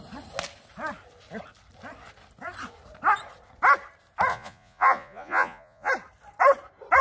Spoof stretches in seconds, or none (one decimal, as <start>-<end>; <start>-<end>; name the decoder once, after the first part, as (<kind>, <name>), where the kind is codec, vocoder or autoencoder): 4.3-5.9 (vocoder, Vocos)